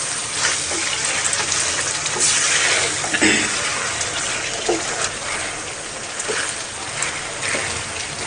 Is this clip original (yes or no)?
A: yes